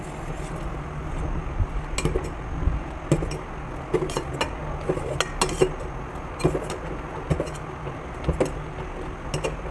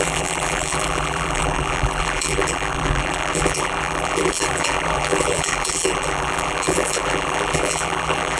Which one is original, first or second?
first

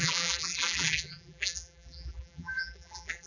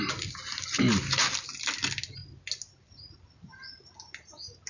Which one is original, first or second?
second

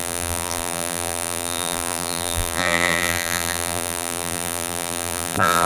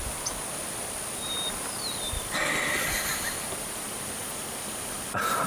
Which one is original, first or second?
second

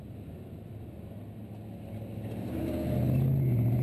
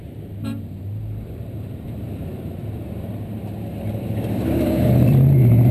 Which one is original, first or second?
first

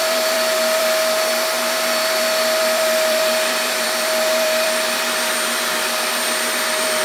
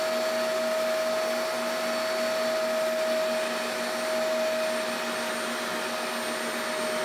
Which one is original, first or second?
second